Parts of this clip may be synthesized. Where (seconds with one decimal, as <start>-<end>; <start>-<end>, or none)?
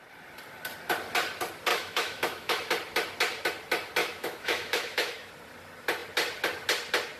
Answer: 1.7-2.7; 4.0-5.3